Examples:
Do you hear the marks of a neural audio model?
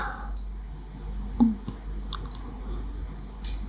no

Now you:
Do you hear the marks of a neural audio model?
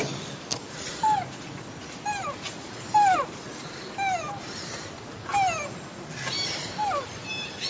no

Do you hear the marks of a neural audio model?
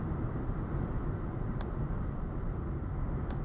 no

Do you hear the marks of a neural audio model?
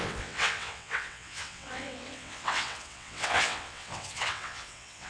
yes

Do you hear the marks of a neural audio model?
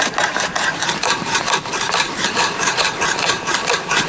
yes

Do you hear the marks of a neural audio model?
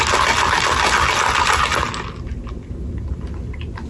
no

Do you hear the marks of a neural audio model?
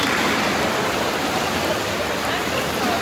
no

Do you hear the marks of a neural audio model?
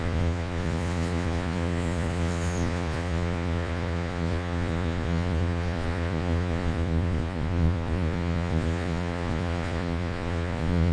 yes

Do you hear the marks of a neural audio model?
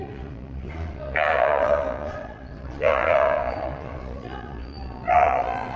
yes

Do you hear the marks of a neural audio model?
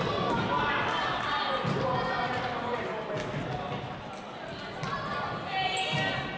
no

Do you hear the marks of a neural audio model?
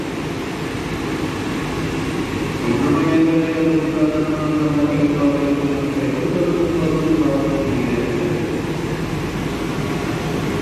no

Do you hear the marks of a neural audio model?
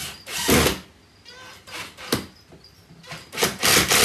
no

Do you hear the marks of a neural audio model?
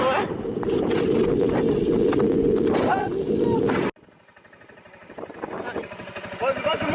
no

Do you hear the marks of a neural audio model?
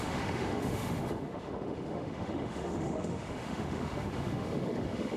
yes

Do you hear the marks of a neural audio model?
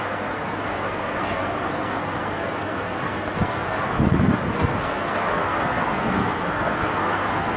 yes